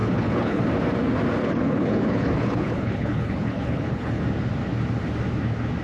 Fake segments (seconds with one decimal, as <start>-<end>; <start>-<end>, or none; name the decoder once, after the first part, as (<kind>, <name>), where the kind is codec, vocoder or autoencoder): 0.0-0.6 (codec, HILCodec); 1.4-4.2